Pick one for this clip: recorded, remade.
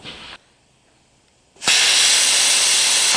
recorded